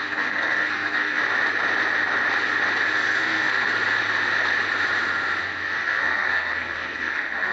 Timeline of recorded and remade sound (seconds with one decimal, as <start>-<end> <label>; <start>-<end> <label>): 0.0-1.2 remade; 1.2-2.9 recorded; 2.9-3.7 remade; 3.7-5.4 recorded; 5.4-7.5 remade